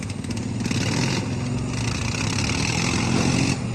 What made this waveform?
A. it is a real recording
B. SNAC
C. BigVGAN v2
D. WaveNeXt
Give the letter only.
A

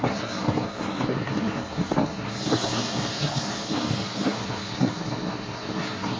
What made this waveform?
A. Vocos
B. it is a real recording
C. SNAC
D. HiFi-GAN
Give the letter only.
C